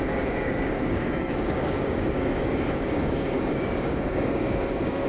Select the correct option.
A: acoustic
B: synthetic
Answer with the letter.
B